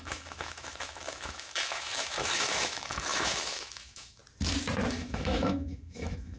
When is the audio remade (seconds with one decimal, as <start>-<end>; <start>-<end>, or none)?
0.0-4.2; 4.9-6.4